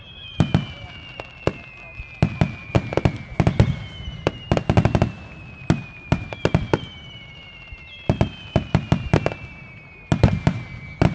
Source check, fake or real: real